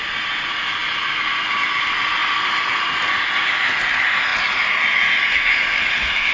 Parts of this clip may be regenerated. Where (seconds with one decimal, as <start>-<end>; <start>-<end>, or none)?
none